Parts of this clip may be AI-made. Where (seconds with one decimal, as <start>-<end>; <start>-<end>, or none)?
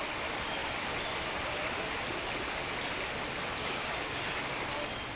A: 3.6-4.2